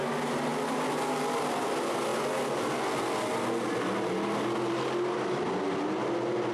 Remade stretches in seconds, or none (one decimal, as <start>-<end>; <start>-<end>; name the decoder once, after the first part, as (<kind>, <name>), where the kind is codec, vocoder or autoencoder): none